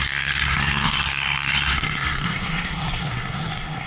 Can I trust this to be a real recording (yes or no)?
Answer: no